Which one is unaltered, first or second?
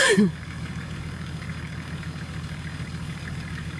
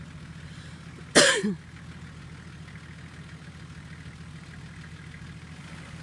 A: second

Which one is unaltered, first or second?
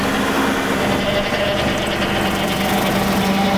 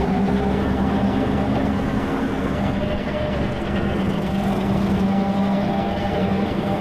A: first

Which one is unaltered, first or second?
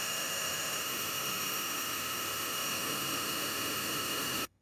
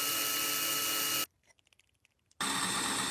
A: second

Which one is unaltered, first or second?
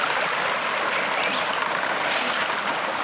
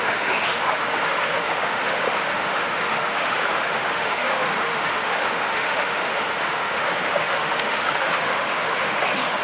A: first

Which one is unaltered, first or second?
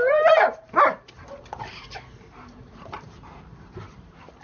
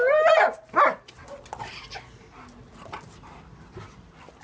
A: second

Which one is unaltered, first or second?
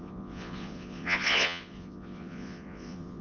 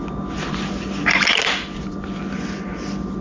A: second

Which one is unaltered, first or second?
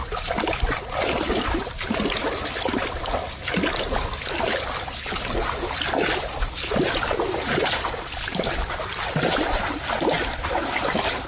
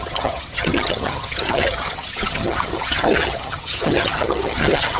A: first